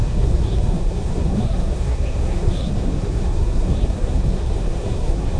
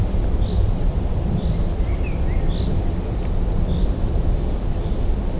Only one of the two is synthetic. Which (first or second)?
first